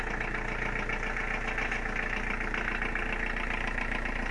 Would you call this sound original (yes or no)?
yes